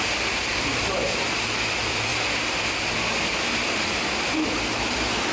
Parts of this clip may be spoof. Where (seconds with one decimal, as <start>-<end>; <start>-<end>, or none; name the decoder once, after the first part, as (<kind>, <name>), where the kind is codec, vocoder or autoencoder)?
0.0-2.1 (vocoder, BigVGAN v2)